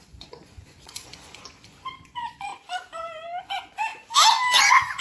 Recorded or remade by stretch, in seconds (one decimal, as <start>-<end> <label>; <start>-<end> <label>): 0.0-2.5 remade; 2.5-3.4 recorded; 3.4-3.9 remade; 3.9-4.6 recorded; 4.6-5.0 remade